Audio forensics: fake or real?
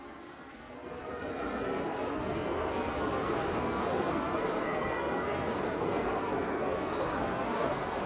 fake